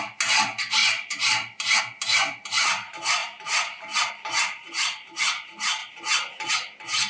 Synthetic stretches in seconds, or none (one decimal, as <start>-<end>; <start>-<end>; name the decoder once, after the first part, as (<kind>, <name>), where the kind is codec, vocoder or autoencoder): 0.8-1.8 (vocoder, BigVGAN v2)